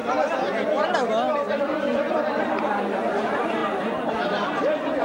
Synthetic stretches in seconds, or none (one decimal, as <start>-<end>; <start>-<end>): none